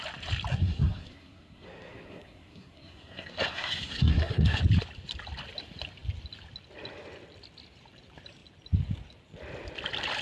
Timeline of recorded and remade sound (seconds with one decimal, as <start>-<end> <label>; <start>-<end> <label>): 0.0-0.5 recorded; 0.5-4.6 remade; 4.6-10.2 recorded